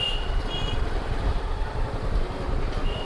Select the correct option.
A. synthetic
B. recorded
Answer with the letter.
B